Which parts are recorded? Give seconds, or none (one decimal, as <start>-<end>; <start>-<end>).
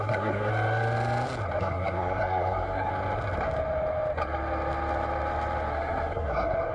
0.5-1.6; 2.9-5.7